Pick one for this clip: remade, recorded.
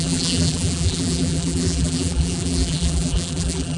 remade